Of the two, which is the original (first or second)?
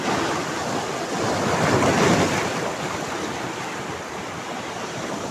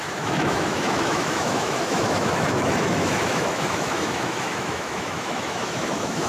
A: first